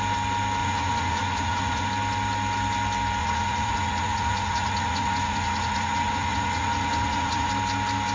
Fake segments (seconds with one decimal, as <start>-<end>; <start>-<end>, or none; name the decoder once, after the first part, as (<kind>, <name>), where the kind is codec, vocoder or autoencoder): 0.6-1.9 (vocoder, Vocos); 3.2-7.5